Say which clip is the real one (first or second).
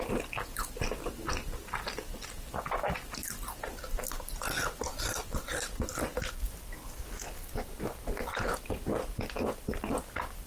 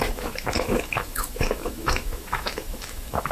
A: first